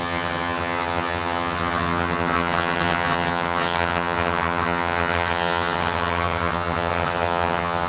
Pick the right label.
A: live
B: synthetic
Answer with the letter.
B